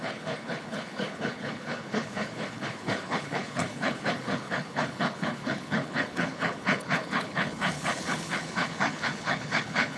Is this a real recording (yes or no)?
no